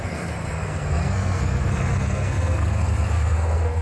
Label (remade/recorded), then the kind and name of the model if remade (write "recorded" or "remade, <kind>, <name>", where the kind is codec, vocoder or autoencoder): remade, codec, SNAC